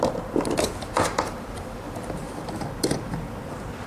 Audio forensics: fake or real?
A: fake